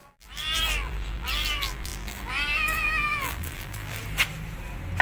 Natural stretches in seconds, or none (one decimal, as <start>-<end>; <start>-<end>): 4.0-5.0